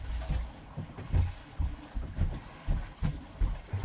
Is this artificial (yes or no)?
no